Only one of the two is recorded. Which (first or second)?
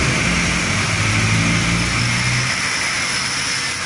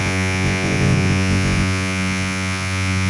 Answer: first